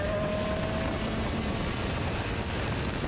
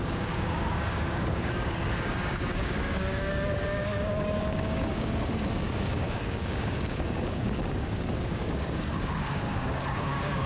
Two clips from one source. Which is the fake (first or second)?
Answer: second